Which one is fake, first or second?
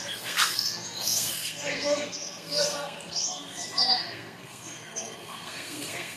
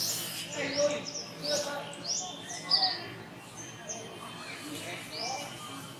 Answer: first